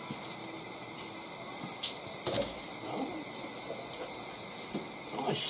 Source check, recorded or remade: recorded